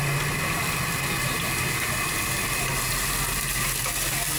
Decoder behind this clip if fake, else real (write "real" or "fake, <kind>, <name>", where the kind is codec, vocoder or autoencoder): real